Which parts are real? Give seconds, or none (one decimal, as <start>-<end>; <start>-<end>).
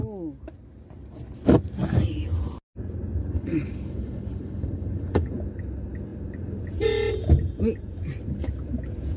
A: 0.0-3.2; 5.3-9.2